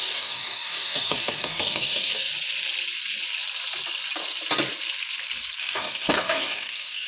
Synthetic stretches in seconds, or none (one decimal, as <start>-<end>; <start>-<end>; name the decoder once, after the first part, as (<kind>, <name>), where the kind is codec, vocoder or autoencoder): 0.0-2.3 (codec, DAC); 5.6-7.1